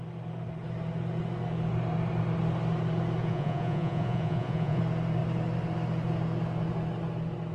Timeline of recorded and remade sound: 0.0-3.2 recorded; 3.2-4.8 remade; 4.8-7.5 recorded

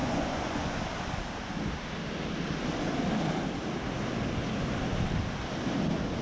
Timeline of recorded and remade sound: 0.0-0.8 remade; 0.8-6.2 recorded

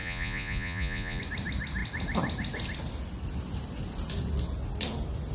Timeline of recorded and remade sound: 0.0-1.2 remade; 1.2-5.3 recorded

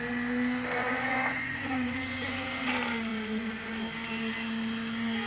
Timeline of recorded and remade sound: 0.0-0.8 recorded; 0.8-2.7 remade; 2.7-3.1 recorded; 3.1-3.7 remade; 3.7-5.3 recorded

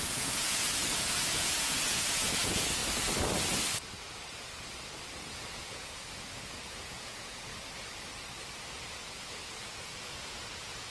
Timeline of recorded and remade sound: 0.0-2.8 remade; 2.8-5.3 recorded; 5.3-7.5 remade; 7.5-8.7 recorded; 8.7-10.9 remade

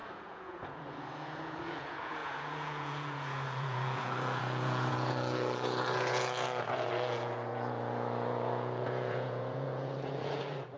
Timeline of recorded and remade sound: 0.0-10.8 remade